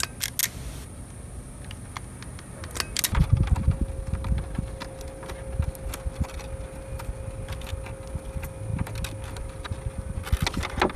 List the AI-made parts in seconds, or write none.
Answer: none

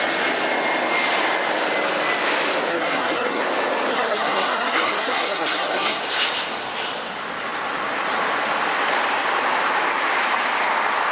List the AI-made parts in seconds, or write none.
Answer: 2.7-3.4 (codec, SNAC); 3.9-6.0

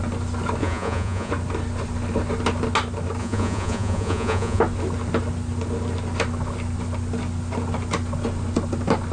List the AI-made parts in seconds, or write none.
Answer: 0.6-1.3 (vocoder, Vocos); 3.2-4.6

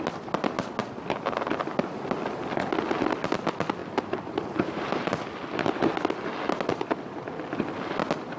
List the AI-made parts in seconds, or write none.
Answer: 3.8-4.8 (vocoder, BigVGAN v2)

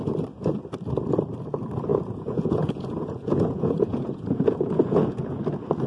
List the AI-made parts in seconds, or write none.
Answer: 1.9-5.4 (vocoder, Vocos)

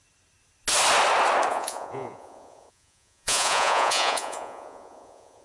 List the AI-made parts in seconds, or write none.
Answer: 1.5-5.4 (vocoder, Vocos)

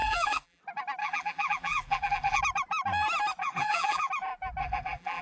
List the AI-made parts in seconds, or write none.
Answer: 0.0-0.6 (vocoder, BigVGAN v2); 1.0-2.4; 3.4-4.1; 4.6-5.2

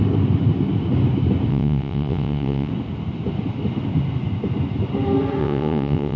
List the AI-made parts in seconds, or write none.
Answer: 1.5-2.7 (vocoder, WaveNeXt); 5.4-6.2